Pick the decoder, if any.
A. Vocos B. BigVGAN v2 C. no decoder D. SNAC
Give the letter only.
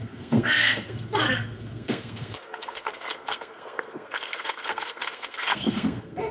D